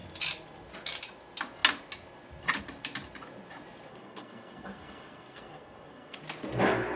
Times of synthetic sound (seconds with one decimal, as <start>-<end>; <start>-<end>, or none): 3.9-6.2